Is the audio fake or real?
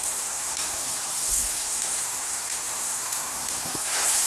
fake